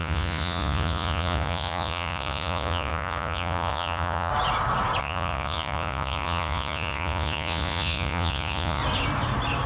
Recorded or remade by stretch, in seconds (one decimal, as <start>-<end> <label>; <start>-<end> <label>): 0.0-4.3 remade; 4.3-5.0 recorded; 5.0-8.8 remade; 8.8-9.7 recorded